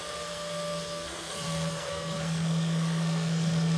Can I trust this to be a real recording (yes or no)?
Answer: no